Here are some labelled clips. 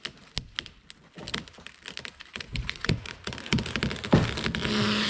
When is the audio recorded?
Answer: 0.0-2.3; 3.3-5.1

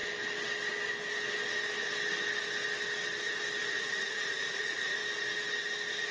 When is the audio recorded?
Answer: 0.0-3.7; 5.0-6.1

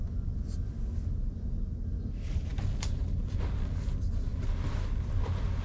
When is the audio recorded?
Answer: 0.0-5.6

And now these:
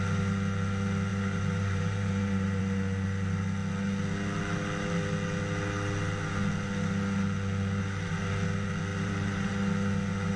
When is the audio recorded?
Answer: 0.0-1.1; 2.6-8.9; 9.5-10.4

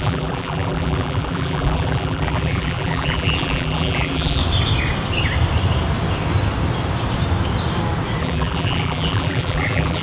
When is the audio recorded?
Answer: 4.4-8.2